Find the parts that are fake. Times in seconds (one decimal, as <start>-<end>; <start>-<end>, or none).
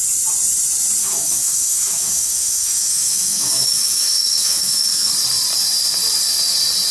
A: 1.0-5.1